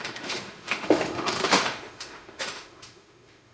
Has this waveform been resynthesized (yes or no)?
yes